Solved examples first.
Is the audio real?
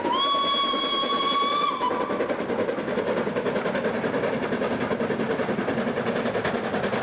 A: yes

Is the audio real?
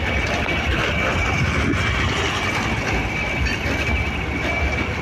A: yes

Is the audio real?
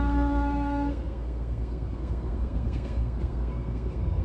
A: no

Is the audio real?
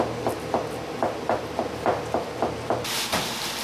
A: yes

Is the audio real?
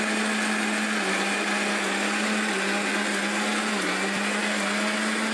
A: yes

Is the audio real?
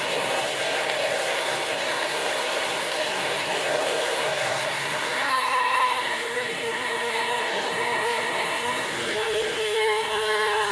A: no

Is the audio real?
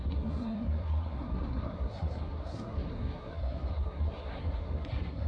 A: no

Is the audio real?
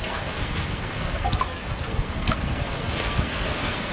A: no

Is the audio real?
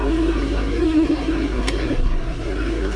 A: no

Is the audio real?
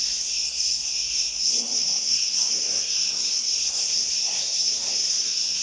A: no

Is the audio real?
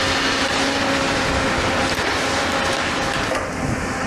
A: yes